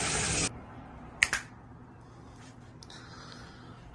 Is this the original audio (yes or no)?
yes